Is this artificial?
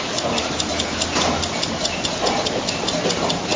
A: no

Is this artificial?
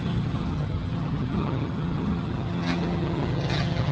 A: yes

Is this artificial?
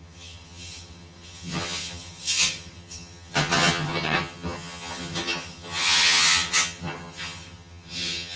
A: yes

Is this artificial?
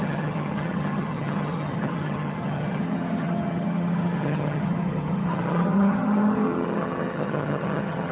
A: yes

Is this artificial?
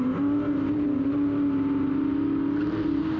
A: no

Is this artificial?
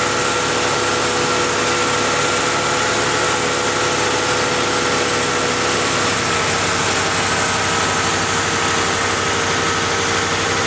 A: no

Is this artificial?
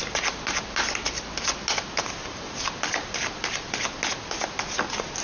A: no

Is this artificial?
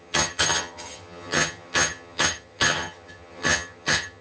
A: yes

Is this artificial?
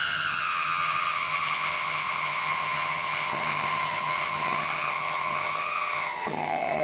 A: yes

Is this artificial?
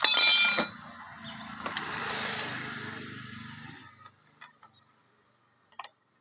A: no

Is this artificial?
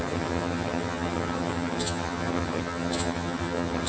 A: yes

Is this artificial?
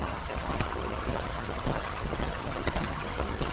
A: yes